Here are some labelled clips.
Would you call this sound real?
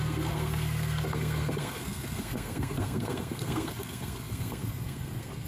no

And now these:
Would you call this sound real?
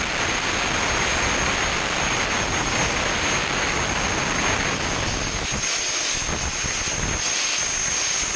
yes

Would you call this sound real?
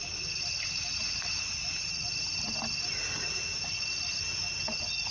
yes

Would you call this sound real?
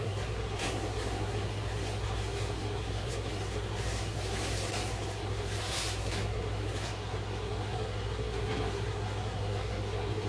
no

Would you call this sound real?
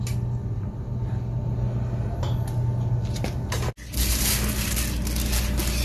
yes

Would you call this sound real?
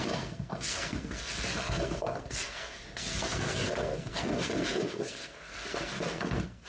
no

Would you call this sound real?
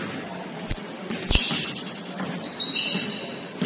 yes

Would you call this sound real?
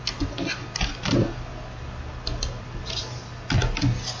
yes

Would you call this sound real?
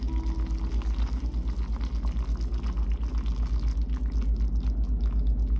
yes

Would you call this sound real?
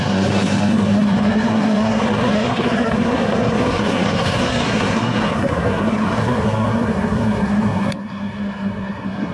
no